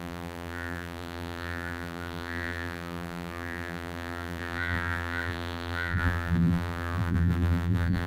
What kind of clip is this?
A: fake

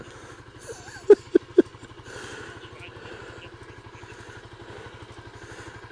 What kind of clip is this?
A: real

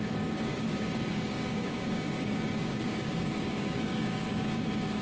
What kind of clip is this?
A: fake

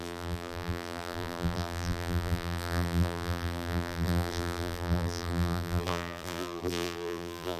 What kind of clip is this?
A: fake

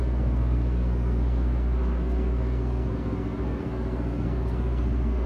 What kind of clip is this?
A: fake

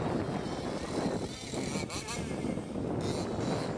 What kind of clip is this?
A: real